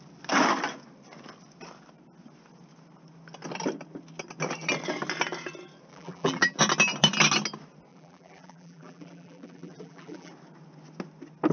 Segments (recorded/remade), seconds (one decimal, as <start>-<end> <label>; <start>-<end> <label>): 0.0-5.9 recorded; 5.9-6.6 remade; 6.6-7.9 recorded; 7.9-10.3 remade; 10.3-11.5 recorded